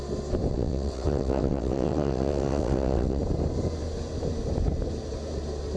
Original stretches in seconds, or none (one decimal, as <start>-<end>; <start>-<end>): 0.0-0.5; 3.2-5.8